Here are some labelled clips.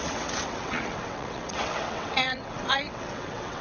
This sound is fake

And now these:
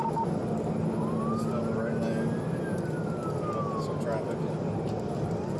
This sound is real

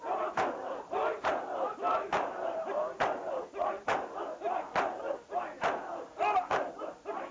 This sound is real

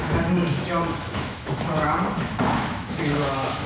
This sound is fake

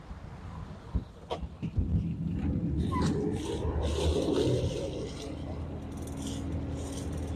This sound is real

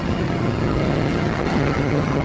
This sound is fake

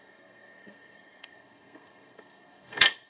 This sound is fake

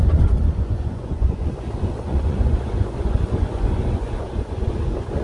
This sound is fake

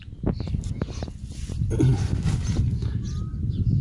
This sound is real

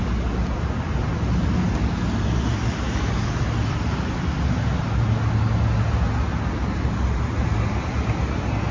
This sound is real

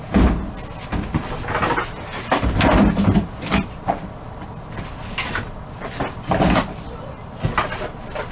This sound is real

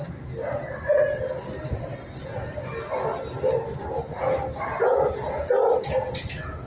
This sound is real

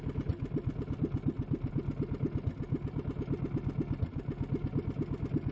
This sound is real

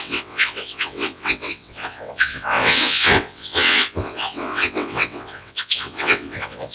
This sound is fake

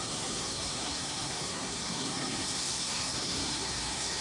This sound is fake